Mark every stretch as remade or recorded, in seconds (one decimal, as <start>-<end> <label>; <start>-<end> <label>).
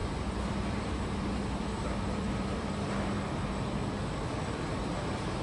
0.0-3.8 remade; 3.8-4.4 recorded; 4.4-5.4 remade